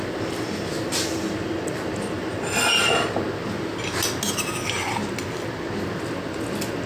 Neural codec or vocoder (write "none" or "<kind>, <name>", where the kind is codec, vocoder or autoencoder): none